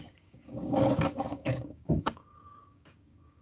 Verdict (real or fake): fake